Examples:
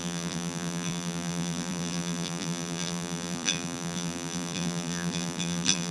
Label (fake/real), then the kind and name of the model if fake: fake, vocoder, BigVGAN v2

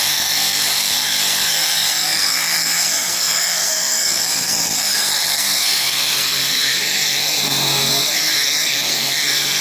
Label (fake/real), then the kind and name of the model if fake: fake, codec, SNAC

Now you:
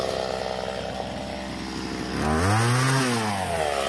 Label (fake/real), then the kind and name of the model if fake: real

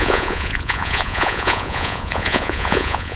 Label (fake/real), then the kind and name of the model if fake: fake, vocoder, Vocos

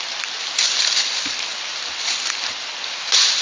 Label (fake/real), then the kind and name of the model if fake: real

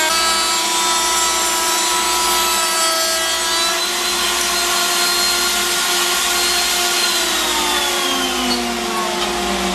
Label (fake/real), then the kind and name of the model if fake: real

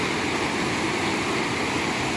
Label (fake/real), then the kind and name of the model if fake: real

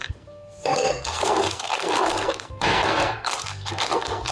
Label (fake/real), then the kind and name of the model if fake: fake, codec, SNAC